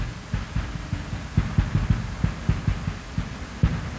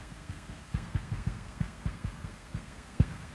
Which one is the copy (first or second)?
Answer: second